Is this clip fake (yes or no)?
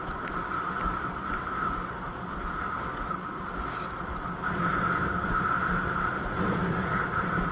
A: no